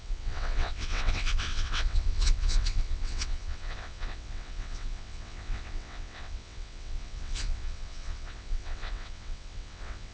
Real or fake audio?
fake